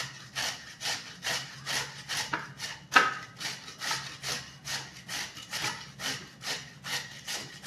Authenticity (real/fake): real